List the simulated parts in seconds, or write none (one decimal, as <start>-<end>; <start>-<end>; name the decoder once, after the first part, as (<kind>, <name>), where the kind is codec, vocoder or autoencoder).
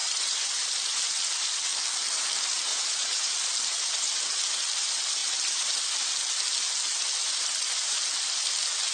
2.7-3.3 (vocoder, Vocos)